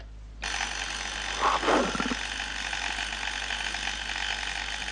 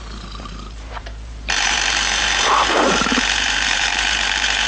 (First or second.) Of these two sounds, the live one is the first